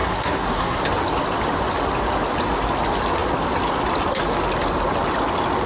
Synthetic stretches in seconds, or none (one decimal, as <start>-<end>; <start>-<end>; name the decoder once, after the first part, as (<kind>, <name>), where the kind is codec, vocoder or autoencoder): 0.0-0.8 (codec, SNAC)